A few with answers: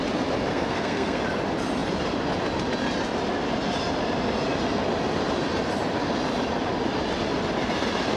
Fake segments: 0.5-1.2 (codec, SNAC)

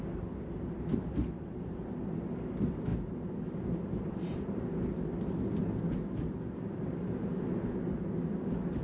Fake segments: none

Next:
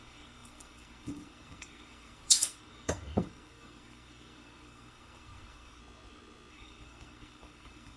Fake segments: 0.0-5.8 (codec, SNAC); 6.5-8.0